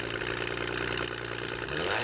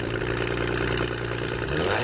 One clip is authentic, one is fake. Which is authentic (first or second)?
first